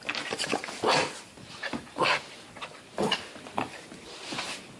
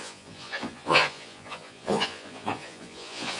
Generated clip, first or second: second